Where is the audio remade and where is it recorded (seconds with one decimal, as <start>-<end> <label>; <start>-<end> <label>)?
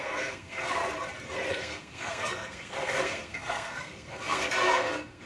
0.0-0.8 remade; 0.8-1.5 recorded; 1.5-5.3 remade